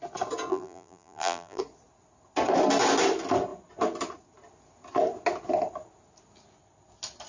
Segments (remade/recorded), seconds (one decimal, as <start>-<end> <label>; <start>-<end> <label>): 0.0-0.5 recorded; 0.5-1.6 remade; 1.6-7.3 recorded